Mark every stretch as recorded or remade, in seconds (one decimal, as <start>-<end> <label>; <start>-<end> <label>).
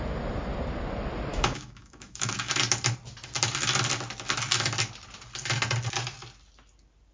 0.0-1.3 recorded; 1.3-2.5 remade; 2.5-7.1 recorded